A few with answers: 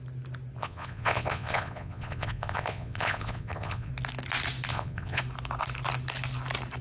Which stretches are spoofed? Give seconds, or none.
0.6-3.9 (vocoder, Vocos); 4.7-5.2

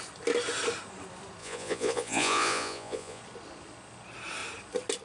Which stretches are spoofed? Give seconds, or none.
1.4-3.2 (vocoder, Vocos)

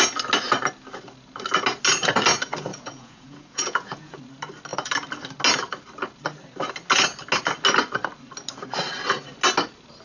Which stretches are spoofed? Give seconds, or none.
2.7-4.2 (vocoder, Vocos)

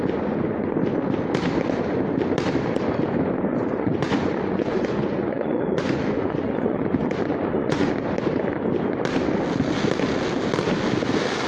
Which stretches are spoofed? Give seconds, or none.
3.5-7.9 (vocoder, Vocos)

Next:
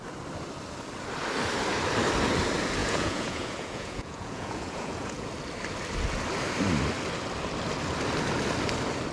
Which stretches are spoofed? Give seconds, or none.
2.8-5.3 (vocoder, Vocos)